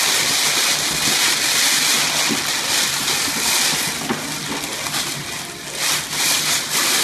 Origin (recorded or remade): recorded